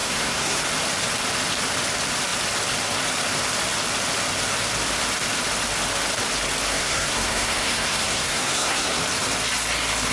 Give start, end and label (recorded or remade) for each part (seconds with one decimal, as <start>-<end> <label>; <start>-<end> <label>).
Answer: 0.0-0.6 remade; 0.6-6.7 recorded; 6.7-9.0 remade; 9.0-10.1 recorded